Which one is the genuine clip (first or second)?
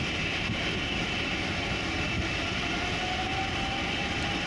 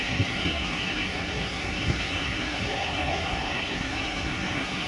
first